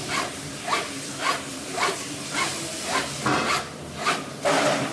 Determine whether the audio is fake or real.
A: real